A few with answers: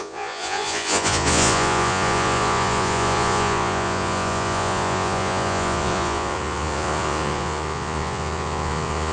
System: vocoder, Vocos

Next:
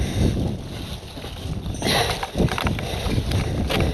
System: none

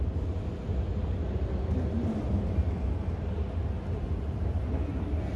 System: none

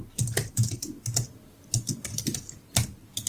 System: none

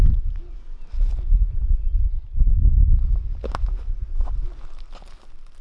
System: none